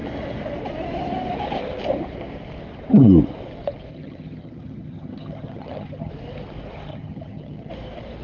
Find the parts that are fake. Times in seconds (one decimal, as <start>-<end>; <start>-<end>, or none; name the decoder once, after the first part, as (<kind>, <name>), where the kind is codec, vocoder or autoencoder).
3.9-6.1 (vocoder, HiFi-GAN); 6.9-7.7